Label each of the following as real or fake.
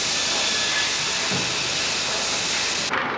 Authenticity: real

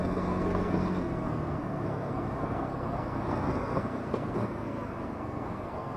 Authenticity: fake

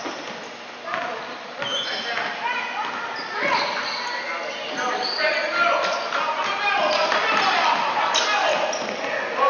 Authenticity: real